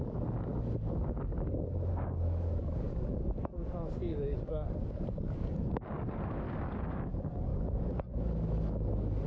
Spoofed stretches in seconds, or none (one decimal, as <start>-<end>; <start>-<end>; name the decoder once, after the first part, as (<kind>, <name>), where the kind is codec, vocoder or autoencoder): 0.0-9.3 (codec, DAC)